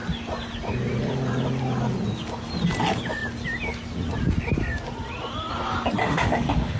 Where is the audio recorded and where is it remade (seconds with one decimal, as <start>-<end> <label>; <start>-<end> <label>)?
0.0-6.0 recorded; 6.0-6.8 remade